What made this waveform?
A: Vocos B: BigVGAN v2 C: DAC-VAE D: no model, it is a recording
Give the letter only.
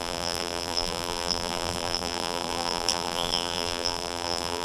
B